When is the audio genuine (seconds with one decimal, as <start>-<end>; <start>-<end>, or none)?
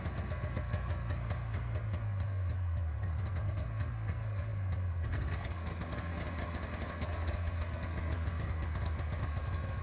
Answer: 6.1-6.9